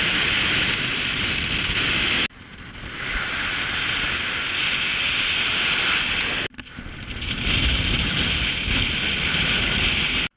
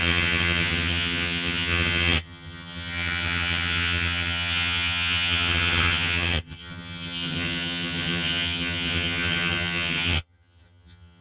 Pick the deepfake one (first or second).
second